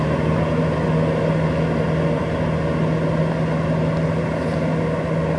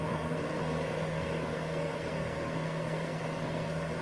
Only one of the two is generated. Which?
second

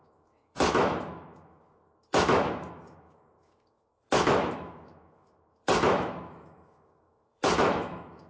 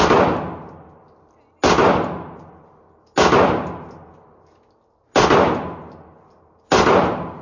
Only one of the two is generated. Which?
first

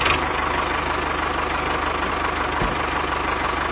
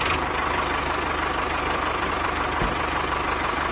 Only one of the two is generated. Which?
second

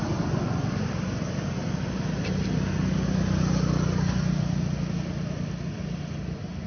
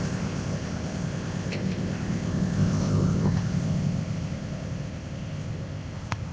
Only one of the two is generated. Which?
second